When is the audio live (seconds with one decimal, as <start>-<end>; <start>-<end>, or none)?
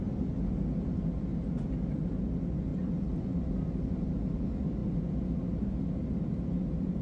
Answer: 0.0-7.0